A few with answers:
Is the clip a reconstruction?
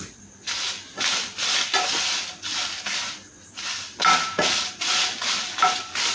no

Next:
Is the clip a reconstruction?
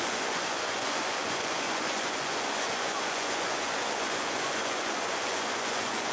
yes